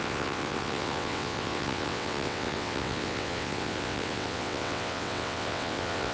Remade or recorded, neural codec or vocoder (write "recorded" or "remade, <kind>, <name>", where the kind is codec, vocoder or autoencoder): remade, vocoder, WaveNeXt